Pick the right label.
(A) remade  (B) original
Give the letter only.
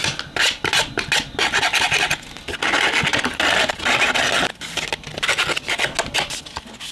B